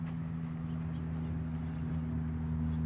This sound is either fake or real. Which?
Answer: real